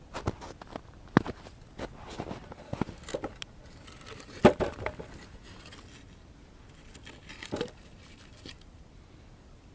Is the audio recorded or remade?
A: recorded